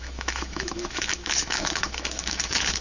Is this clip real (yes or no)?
no